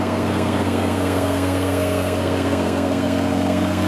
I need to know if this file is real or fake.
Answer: fake